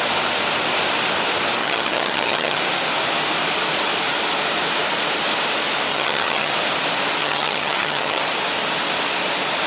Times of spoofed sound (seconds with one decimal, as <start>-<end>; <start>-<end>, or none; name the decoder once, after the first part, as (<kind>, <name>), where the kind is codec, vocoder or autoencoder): 1.6-2.6 (vocoder, HiFi-GAN); 5.9-6.5; 7.2-8.2